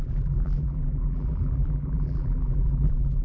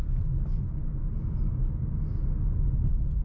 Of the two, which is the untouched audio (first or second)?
second